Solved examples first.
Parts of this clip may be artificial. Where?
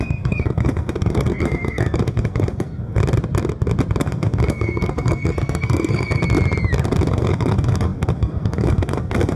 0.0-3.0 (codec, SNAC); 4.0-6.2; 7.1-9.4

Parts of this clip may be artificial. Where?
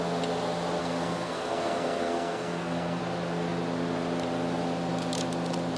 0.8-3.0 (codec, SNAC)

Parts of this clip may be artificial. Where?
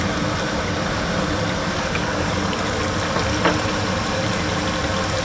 1.6-2.8 (codec, DAC)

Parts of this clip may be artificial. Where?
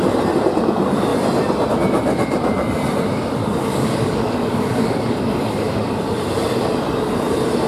3.4-5.9 (codec, DAC)